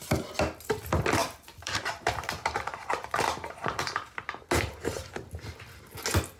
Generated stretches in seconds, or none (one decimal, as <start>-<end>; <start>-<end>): 1.2-4.2